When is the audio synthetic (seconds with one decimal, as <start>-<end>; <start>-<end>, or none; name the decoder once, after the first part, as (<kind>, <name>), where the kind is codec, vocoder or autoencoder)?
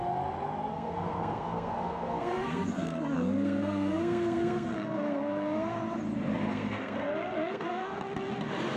0.7-5.8 (codec, SNAC); 6.5-8.0